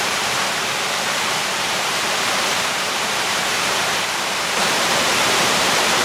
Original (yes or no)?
no